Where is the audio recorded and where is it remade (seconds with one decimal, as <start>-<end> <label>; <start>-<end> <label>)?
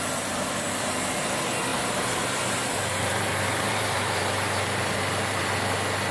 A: 0.0-1.7 recorded; 1.7-5.4 remade; 5.4-6.1 recorded